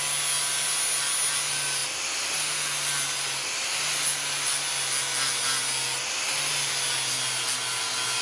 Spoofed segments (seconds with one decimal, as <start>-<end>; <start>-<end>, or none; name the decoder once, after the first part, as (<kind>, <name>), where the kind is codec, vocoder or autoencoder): none